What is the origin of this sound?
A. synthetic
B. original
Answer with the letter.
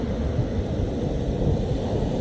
B